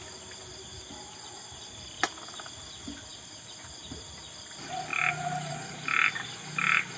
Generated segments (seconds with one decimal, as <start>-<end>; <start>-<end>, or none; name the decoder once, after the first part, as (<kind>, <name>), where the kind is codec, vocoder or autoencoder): none